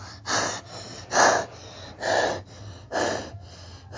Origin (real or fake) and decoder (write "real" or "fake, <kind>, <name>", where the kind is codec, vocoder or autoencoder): real